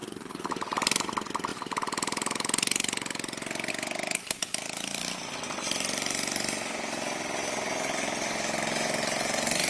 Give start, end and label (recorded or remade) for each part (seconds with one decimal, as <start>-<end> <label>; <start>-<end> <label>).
0.0-0.5 remade; 0.5-9.7 recorded

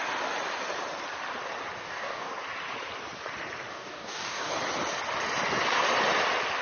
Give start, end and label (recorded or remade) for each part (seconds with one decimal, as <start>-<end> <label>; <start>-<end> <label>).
0.0-1.8 recorded; 1.8-2.3 remade; 2.3-3.7 recorded; 3.7-4.5 remade; 4.5-6.6 recorded

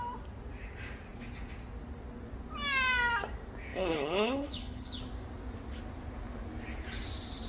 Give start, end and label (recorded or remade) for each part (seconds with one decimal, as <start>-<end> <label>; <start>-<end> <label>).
0.0-3.7 recorded; 3.7-5.0 remade; 5.0-7.5 recorded

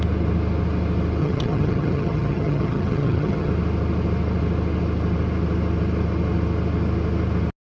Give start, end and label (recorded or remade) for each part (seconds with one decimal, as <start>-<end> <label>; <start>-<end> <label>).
0.0-1.2 recorded; 1.2-3.5 remade; 3.5-7.6 recorded